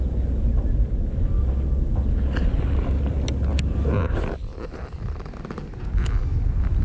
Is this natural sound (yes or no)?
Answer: yes